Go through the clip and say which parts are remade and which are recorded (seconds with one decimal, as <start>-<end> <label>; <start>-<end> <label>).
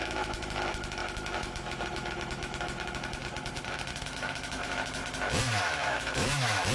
0.0-3.2 remade; 3.2-3.7 recorded; 3.7-5.0 remade; 5.0-5.6 recorded; 5.6-6.7 remade